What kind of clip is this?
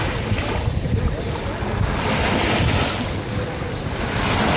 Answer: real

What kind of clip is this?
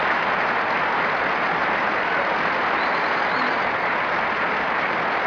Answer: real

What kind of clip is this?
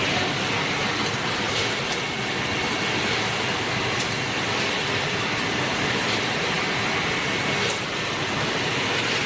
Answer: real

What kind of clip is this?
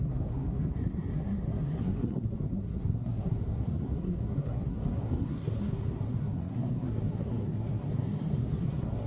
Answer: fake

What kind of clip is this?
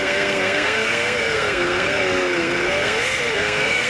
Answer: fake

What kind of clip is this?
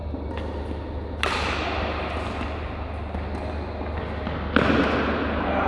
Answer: real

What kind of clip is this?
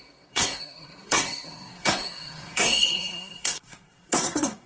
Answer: fake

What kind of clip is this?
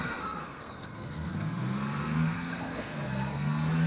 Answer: fake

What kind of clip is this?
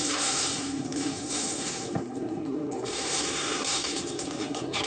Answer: fake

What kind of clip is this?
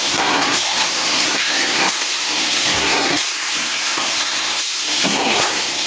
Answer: fake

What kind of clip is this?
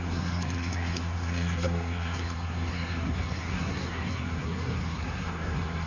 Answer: fake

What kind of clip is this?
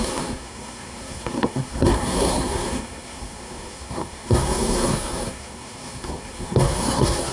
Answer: fake